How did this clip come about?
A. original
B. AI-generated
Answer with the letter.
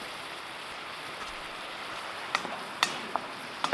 B